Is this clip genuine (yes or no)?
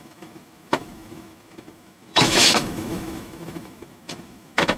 no